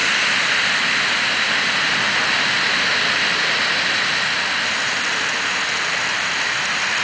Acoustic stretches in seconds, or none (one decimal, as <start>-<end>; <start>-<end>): 0.0-7.0